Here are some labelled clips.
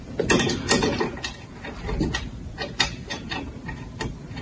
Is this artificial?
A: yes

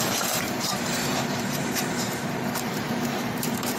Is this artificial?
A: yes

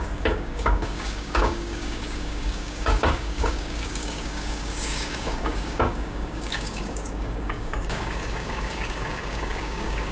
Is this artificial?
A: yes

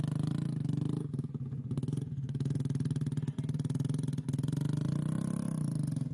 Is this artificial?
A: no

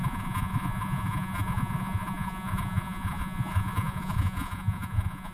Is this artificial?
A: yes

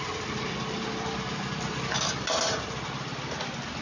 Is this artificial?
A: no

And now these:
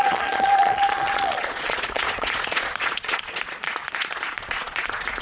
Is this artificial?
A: yes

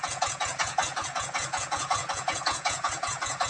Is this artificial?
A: yes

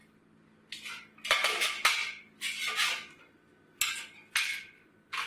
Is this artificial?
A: no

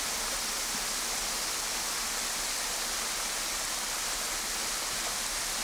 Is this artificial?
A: no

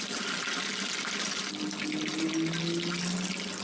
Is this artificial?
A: no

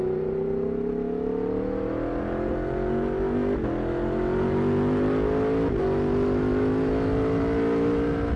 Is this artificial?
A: no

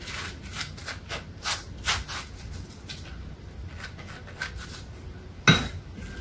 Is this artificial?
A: no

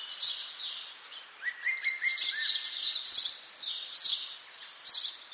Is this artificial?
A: no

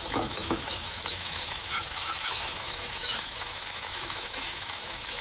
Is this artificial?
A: yes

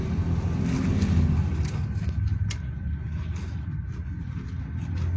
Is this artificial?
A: no